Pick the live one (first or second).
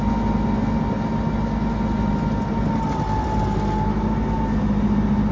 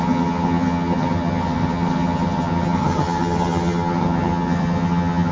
first